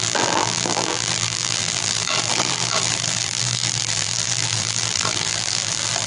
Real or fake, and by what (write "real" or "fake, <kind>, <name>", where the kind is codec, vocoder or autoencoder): fake, vocoder, BigVGAN v2